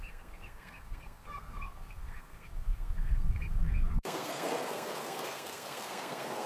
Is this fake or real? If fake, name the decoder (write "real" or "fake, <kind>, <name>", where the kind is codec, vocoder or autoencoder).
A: fake, codec, SNAC